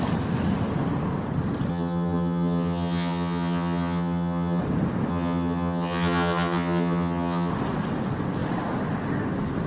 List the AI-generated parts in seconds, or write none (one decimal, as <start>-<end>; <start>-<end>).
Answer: 1.7-4.6; 5.1-7.5